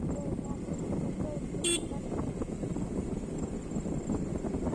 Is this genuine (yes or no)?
yes